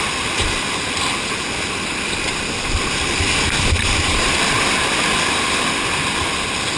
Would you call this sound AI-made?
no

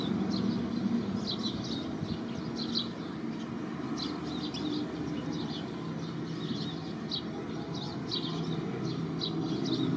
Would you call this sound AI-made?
no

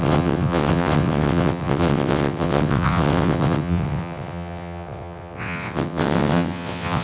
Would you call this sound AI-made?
yes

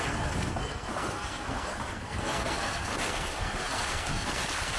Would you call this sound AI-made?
yes